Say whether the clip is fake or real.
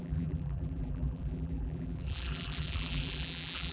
fake